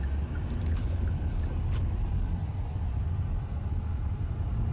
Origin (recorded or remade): recorded